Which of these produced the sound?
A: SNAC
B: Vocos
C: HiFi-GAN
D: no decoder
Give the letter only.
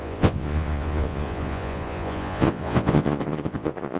B